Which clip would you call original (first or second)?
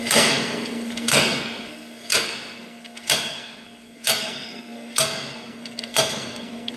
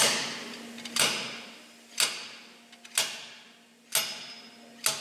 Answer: second